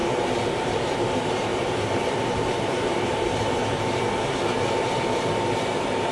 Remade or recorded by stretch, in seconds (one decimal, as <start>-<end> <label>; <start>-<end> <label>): 0.0-0.5 recorded; 0.5-6.1 remade